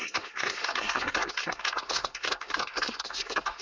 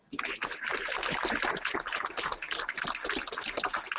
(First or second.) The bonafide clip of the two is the second